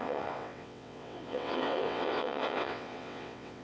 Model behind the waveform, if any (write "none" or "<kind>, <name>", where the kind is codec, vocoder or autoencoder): vocoder, WaveNeXt